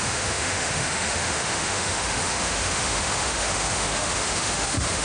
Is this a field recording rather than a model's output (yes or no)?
no